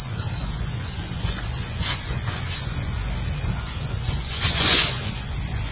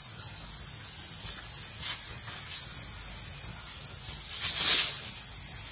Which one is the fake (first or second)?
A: first